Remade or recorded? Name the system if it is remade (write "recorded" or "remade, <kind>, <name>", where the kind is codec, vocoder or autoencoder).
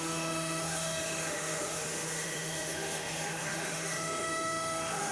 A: remade, autoencoder, DAC-VAE